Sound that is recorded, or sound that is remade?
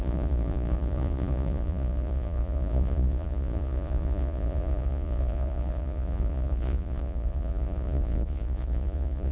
remade